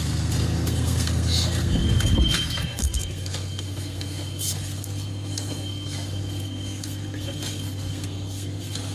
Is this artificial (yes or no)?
yes